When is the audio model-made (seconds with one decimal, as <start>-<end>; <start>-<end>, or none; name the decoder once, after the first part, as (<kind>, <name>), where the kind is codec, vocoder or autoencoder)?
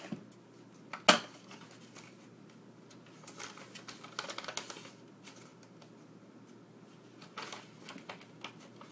none